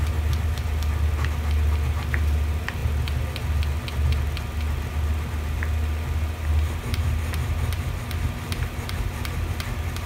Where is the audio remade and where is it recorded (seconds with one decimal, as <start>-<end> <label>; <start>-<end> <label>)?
0.0-10.1 recorded